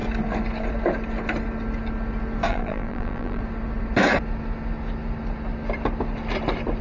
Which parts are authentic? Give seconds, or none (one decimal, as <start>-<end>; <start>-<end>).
0.0-2.5; 3.4-6.8

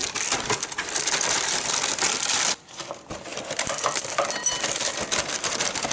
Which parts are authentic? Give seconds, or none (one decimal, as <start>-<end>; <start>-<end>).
2.8-3.3; 4.1-5.9